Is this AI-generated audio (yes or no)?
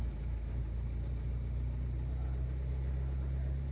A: no